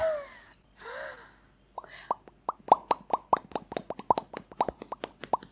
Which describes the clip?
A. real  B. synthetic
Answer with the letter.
A